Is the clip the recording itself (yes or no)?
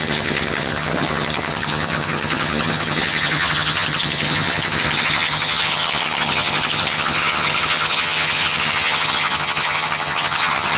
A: no